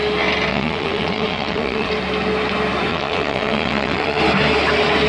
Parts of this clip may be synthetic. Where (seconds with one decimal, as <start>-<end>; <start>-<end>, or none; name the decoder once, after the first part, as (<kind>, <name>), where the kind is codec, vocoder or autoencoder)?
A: 0.5-1.9 (vocoder, WaveNeXt); 2.9-4.2

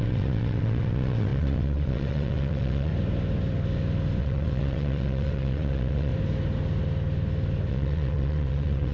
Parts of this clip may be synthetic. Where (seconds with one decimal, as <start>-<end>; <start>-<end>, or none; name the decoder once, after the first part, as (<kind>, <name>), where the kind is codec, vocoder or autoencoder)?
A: 0.0-2.9 (vocoder, WaveNeXt); 4.2-6.1; 7.7-8.9

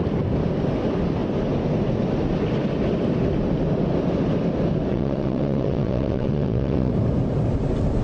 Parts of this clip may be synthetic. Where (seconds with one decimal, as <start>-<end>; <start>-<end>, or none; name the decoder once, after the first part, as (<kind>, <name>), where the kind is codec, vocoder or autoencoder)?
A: 4.9-6.9 (vocoder, WaveNeXt)

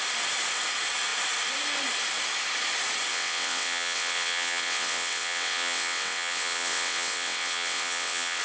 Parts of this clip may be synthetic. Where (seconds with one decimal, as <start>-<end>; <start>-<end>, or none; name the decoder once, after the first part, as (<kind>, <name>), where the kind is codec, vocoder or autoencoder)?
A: 3.1-8.4 (vocoder, WaveNeXt)

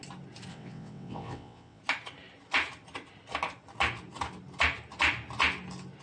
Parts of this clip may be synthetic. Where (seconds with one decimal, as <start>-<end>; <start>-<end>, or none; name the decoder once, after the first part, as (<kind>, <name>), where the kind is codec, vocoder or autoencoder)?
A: 0.5-1.8 (vocoder, WaveNeXt)

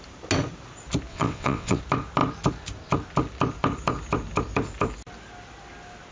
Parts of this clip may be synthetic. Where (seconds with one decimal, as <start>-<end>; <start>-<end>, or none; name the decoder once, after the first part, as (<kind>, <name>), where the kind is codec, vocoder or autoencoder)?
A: 1.1-1.8 (vocoder, WaveNeXt)

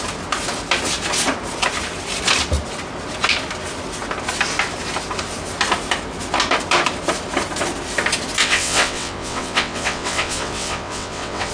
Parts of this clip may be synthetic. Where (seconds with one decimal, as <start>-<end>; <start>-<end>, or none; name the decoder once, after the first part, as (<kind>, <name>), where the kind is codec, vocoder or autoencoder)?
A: 8.4-11.5 (vocoder, WaveNeXt)

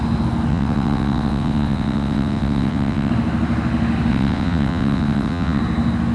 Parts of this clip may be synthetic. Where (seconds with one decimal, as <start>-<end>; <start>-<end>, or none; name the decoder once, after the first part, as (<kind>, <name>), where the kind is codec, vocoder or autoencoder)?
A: 0.5-3.1 (vocoder, WaveNeXt); 4.1-5.6